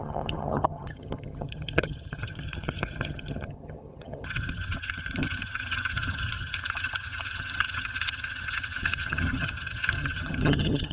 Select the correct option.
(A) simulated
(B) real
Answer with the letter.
A